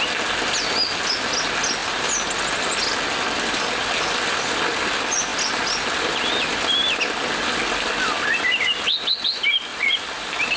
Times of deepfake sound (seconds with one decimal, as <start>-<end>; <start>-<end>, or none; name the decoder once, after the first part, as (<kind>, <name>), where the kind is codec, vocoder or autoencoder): 9.7-10.6 (vocoder, BigVGAN v2)